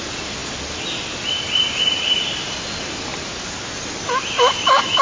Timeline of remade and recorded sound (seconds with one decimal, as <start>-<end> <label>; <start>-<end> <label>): 0.0-5.0 recorded